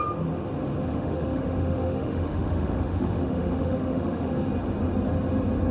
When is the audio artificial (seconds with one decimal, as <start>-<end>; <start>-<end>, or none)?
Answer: 0.9-4.3